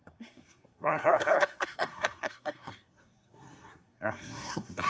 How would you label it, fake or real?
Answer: fake